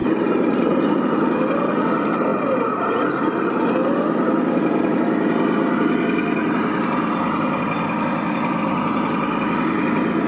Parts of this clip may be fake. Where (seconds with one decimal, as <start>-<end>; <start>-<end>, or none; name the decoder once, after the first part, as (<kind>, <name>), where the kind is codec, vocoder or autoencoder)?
0.0-1.0 (vocoder, BigVGAN v2)